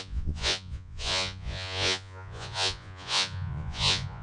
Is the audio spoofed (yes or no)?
yes